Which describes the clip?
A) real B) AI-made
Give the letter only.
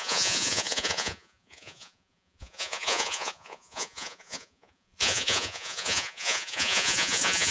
B